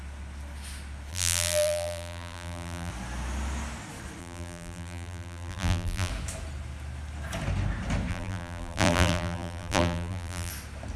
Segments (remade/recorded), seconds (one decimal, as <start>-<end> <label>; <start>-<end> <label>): 0.0-1.1 recorded; 1.1-2.9 remade; 2.9-4.2 recorded; 4.2-6.1 remade; 6.1-8.1 recorded; 8.1-10.5 remade; 10.5-11.0 recorded